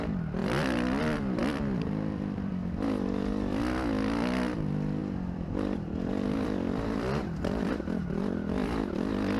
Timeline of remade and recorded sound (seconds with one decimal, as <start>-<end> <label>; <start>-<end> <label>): 0.0-0.4 recorded; 0.4-1.0 remade; 1.0-1.4 recorded; 1.4-2.5 remade; 2.5-5.0 recorded; 5.0-7.7 remade; 7.7-9.4 recorded